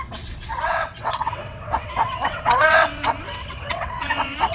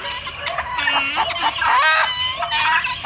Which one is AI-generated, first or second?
first